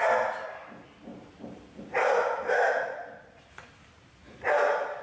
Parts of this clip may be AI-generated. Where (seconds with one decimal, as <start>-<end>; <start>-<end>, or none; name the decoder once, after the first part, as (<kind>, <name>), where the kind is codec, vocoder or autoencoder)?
1.1-4.1 (vocoder, BigVGAN v2)